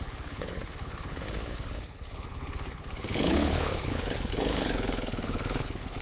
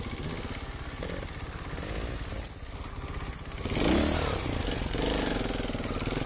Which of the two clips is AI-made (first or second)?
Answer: first